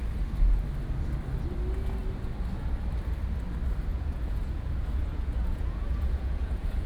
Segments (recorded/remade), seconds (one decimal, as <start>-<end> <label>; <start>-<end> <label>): 0.0-3.9 recorded; 3.9-6.9 remade